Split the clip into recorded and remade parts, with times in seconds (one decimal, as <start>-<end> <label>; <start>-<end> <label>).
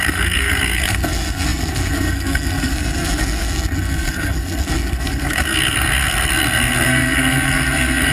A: 0.0-8.1 remade